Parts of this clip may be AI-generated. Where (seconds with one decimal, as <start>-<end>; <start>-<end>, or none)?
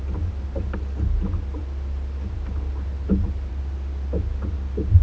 none